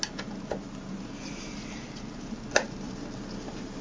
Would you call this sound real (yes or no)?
yes